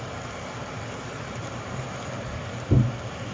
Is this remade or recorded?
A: recorded